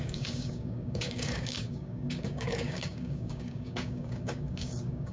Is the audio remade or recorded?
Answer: remade